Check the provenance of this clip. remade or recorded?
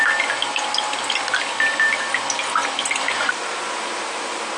recorded